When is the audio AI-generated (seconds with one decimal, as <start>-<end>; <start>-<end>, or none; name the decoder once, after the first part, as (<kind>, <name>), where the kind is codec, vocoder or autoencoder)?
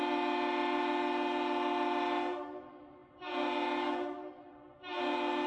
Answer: none